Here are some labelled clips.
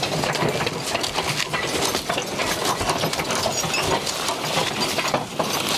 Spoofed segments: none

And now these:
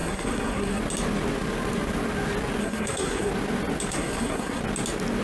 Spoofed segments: 0.0-0.8 (codec, SNAC); 2.6-3.3; 3.9-4.6